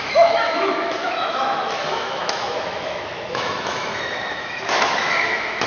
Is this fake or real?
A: fake